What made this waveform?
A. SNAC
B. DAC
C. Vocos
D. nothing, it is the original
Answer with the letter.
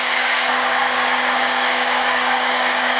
B